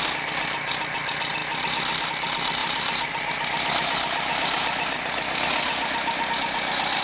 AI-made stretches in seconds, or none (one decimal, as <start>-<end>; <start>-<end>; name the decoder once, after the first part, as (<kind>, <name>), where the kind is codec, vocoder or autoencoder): 2.6-6.3 (vocoder, BigVGAN v2)